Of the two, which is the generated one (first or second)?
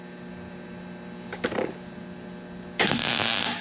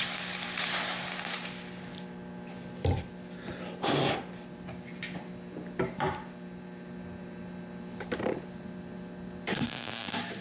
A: second